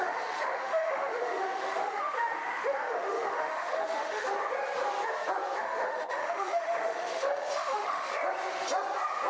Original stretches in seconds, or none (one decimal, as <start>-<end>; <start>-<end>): 4.3-5.6; 8.1-9.3